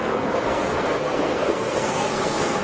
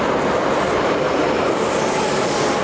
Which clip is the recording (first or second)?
second